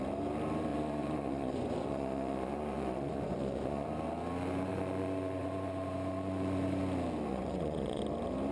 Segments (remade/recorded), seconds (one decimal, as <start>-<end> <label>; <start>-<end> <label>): 0.0-0.7 recorded; 0.7-3.9 remade; 3.9-4.7 recorded; 4.7-6.8 remade; 6.8-7.3 recorded; 7.3-8.0 remade; 8.0-8.5 recorded